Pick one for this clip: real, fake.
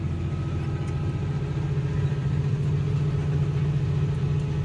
real